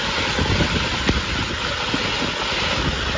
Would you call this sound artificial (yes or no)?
no